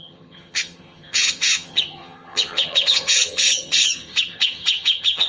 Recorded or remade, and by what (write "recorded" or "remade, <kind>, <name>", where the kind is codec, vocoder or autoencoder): remade, vocoder, HiFi-GAN